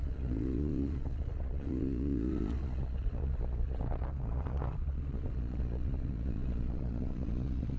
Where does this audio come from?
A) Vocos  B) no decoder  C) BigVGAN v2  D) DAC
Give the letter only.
A